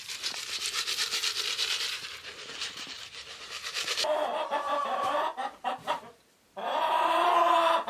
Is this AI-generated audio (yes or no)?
yes